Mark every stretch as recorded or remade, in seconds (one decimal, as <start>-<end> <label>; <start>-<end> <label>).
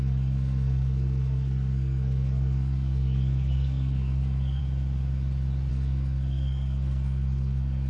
0.0-4.6 remade; 4.6-5.7 recorded; 5.7-7.9 remade